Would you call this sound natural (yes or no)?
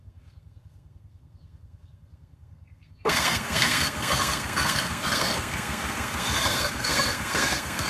no